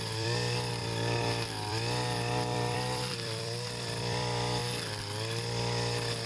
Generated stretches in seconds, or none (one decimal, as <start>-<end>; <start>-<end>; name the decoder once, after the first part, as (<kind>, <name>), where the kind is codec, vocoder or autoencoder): 0.0-4.6 (vocoder, BigVGAN v2)